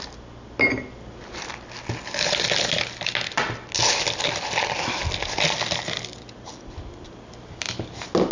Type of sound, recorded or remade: recorded